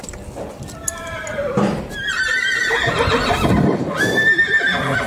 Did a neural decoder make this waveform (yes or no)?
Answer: no